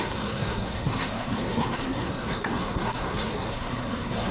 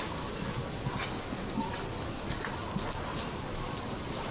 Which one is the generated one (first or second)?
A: first